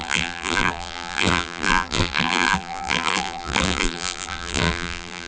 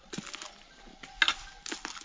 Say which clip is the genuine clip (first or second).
second